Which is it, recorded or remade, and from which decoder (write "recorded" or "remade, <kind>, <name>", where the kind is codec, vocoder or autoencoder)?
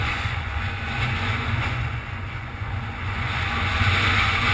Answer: remade, vocoder, Vocos